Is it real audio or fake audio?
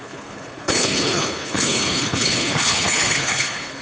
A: fake